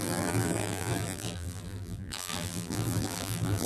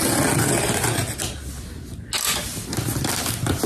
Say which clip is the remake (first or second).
first